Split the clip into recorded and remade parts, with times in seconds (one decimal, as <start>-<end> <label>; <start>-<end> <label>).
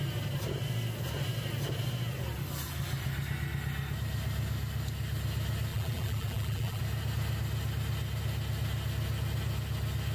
0.0-5.7 recorded; 5.7-6.8 remade; 6.8-10.1 recorded